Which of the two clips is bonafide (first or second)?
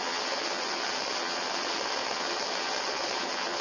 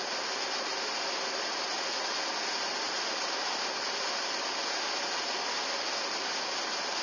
second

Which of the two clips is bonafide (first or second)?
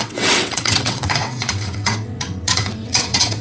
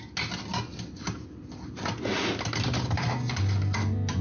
second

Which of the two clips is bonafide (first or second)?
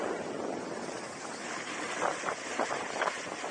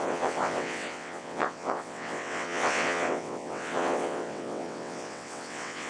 first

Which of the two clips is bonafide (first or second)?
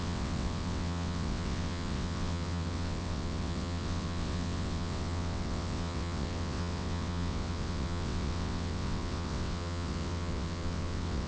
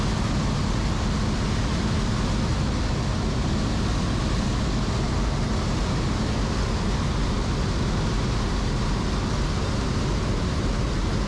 second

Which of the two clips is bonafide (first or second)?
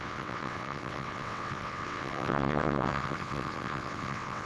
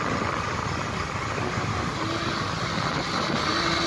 second